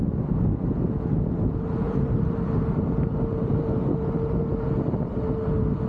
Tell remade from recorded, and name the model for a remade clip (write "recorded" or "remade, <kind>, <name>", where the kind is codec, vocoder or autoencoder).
recorded